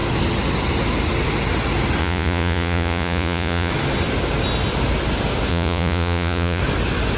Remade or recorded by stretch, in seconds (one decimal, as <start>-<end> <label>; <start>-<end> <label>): 0.0-2.0 recorded; 2.0-3.7 remade; 3.7-5.5 recorded; 5.5-6.6 remade; 6.6-7.2 recorded